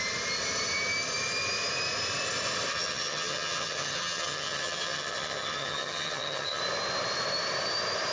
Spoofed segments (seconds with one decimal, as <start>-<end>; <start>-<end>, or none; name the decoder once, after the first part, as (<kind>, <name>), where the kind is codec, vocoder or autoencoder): 2.7-6.6 (vocoder, HiFi-GAN)